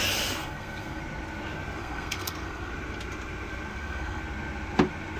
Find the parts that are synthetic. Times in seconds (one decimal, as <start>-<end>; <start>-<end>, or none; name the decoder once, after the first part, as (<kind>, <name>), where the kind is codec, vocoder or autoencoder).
0.4-1.0 (codec, SNAC); 1.8-2.7; 3.7-4.2